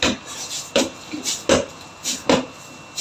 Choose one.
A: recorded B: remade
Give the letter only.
A